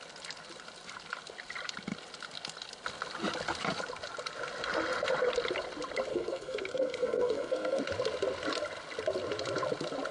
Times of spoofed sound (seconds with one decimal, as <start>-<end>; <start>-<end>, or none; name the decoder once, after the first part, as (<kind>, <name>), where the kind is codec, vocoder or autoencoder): 6.1-7.8 (codec, SNAC)

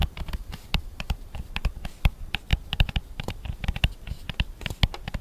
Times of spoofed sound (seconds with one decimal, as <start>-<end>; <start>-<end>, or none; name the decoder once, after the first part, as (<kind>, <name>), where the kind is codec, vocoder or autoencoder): 0.0-1.5 (vocoder, BigVGAN v2); 2.5-3.3

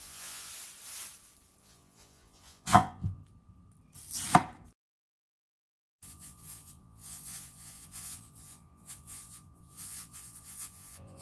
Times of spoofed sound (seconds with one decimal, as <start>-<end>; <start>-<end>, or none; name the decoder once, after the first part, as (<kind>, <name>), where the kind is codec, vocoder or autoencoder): 0.0-0.5 (vocoder, Vocos); 1.6-3.2; 5.0-11.2

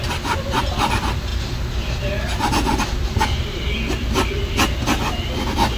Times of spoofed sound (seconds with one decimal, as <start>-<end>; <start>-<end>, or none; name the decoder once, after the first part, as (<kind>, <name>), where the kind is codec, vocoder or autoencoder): none

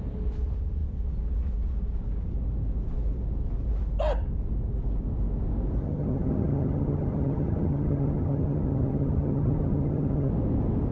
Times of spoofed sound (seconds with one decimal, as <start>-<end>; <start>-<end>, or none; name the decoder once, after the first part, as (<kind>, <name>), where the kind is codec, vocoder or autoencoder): 5.8-10.3 (vocoder, HiFi-GAN)

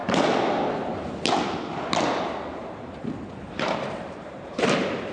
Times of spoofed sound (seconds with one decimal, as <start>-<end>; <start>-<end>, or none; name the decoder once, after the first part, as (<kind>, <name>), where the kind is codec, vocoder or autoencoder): 2.6-5.1 (vocoder, BigVGAN v2)

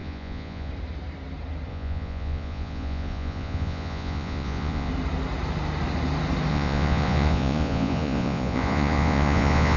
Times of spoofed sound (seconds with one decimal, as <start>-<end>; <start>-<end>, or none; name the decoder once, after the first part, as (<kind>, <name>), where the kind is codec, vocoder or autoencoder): 0.0-0.7 (vocoder, Vocos); 1.7-4.9; 6.5-9.8